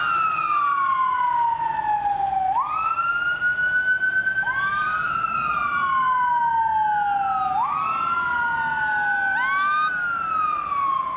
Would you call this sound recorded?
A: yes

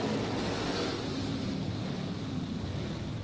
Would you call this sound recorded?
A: yes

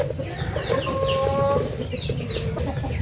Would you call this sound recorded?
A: yes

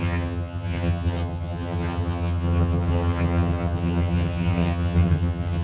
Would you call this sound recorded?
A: no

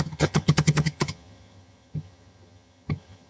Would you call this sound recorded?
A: no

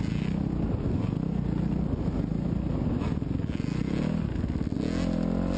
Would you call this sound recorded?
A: yes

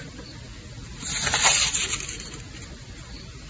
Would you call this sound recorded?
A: yes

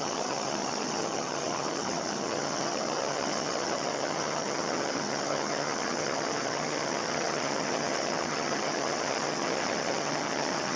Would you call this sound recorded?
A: no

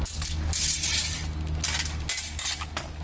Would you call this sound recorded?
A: yes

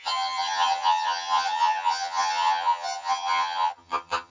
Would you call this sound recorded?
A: no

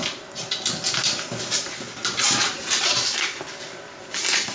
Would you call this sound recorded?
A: yes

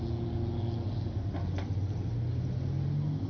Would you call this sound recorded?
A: yes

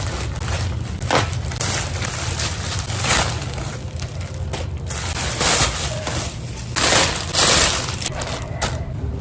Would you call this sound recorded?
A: yes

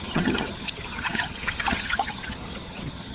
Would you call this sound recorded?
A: no